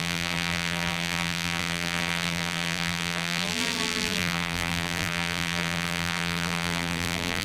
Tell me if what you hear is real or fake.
fake